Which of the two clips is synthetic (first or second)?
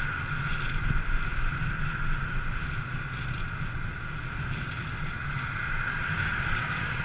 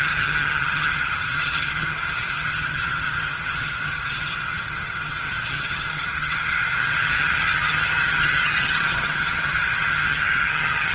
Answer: second